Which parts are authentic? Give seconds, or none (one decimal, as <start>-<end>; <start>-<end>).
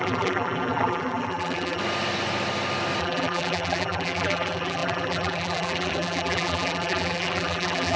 1.8-3.0